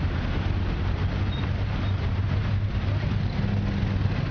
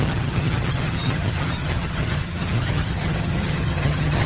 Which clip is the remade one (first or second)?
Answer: second